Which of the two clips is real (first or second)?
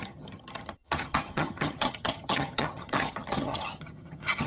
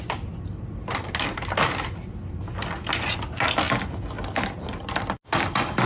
second